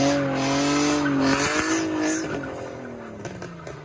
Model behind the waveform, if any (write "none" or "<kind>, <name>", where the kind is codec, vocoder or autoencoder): none